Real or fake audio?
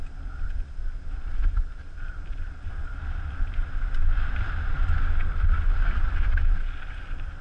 real